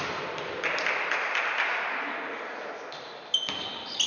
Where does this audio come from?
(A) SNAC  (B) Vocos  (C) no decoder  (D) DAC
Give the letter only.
C